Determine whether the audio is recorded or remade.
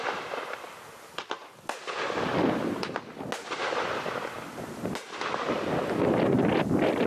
recorded